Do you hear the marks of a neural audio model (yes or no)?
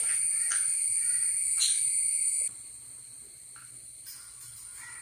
yes